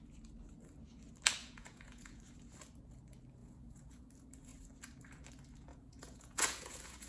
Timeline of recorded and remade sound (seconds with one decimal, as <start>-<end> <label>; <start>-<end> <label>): 0.0-1.4 recorded; 1.4-2.2 remade; 2.2-3.4 recorded; 3.4-4.1 remade; 4.1-5.7 recorded; 5.7-7.1 remade